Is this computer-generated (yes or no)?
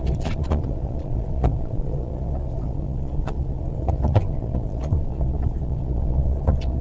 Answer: yes